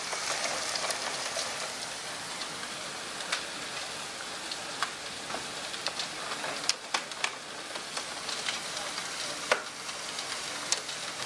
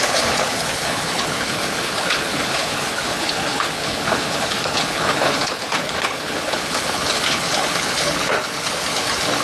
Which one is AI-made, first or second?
second